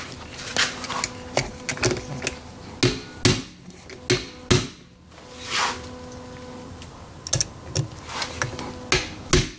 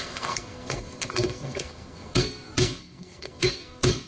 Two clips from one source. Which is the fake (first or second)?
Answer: second